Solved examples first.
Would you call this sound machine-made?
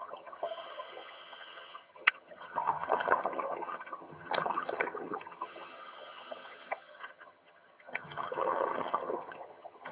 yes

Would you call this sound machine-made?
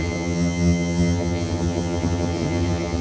yes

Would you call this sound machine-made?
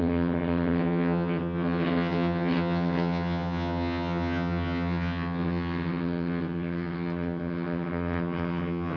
yes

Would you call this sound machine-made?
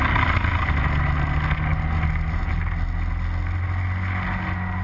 no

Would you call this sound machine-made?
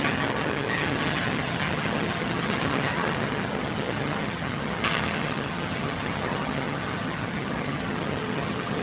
yes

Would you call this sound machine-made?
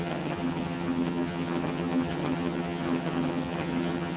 yes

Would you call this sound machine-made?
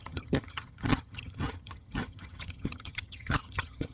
yes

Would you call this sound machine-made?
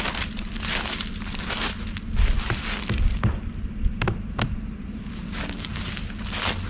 no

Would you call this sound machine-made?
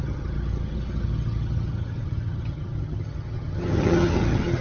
yes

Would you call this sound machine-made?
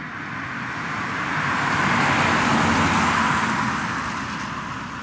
no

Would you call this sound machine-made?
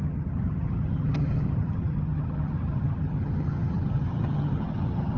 yes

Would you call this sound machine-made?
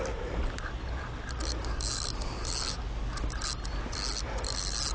no